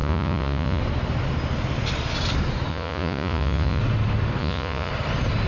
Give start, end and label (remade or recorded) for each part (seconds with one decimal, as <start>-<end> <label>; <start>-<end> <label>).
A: 0.0-0.8 remade; 0.8-2.7 recorded; 2.7-3.8 remade; 3.8-4.4 recorded; 4.4-4.9 remade; 4.9-5.5 recorded